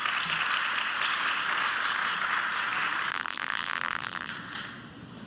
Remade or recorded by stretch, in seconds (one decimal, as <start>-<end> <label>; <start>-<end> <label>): 0.0-3.1 recorded; 3.1-4.3 remade; 4.3-5.3 recorded